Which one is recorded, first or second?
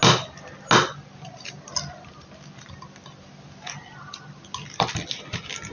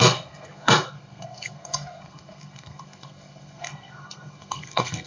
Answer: first